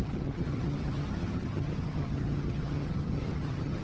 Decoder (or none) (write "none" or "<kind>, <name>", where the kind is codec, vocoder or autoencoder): vocoder, HiFi-GAN